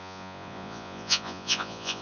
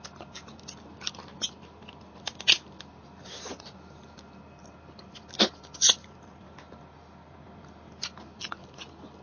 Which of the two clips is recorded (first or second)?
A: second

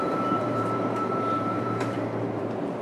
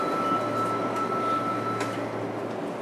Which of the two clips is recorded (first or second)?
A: second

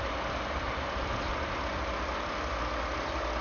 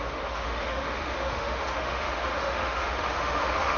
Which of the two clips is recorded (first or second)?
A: first